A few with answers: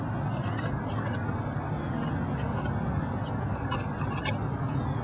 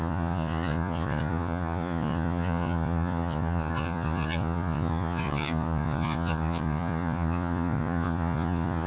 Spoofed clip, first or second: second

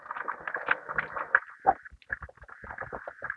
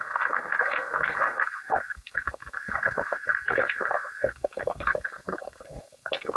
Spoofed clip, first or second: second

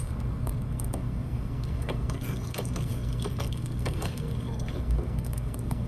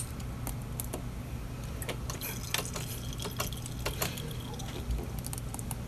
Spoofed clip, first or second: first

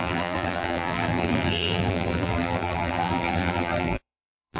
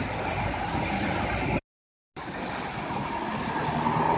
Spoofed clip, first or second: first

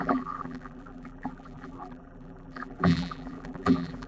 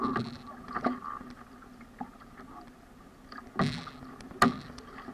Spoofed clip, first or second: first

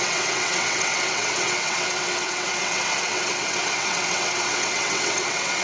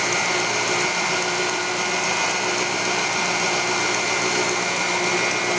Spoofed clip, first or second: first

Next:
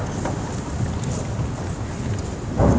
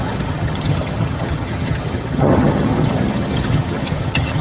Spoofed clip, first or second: second